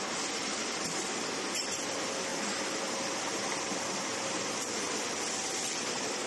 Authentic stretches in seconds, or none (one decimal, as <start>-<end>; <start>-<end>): 0.0-6.3